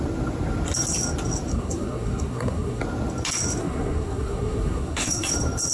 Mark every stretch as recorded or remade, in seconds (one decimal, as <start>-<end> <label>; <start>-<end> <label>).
0.0-1.5 recorded; 1.5-2.8 remade; 2.8-3.6 recorded; 3.6-5.3 remade; 5.3-5.7 recorded